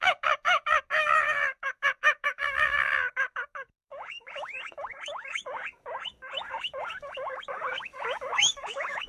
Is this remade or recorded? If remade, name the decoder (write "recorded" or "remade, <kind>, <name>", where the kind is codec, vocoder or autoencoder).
remade, codec, DAC